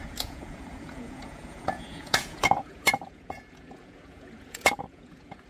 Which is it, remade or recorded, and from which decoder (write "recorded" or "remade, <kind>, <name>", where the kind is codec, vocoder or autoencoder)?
remade, vocoder, Vocos